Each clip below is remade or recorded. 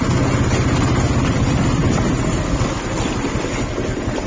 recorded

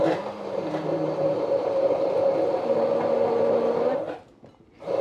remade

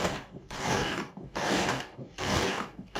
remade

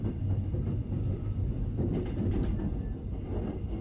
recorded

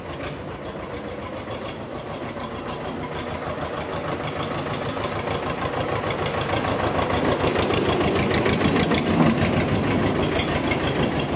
recorded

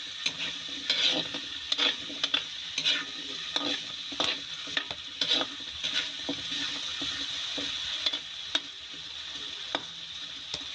recorded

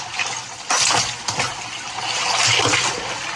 recorded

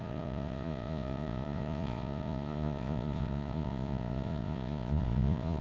remade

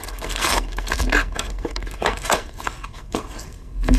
remade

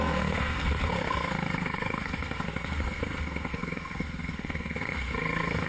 remade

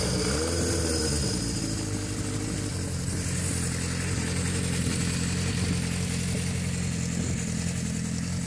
recorded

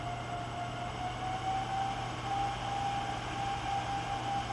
recorded